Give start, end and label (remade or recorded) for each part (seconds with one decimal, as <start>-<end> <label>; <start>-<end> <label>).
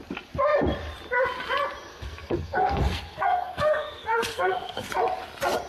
0.0-1.9 recorded; 1.9-4.9 remade; 4.9-5.7 recorded